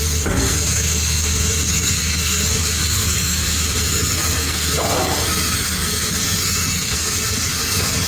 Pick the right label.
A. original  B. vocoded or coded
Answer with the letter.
B